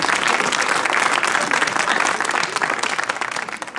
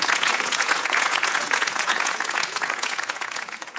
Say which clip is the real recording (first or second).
first